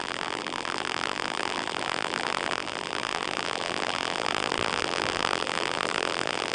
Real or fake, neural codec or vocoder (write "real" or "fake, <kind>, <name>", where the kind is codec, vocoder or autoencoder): fake, vocoder, BigVGAN v2